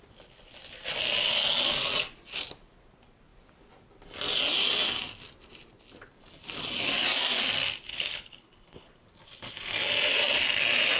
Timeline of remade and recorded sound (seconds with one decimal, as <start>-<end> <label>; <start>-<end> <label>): 0.0-7.9 recorded; 7.9-8.9 remade; 8.9-11.0 recorded